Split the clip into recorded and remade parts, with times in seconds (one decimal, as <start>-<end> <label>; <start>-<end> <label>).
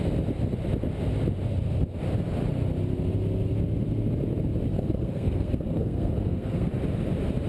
0.0-4.7 recorded; 4.7-6.7 remade; 6.7-7.5 recorded